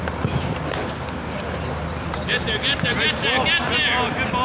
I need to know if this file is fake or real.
fake